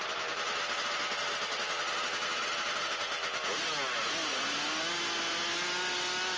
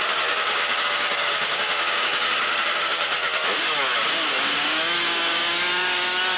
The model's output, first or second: second